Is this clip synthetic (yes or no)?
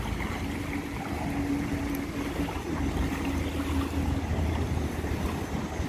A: no